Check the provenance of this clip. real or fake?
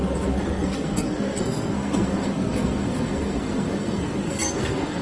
fake